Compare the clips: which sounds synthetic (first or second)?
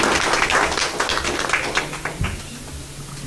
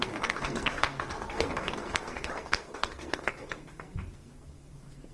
second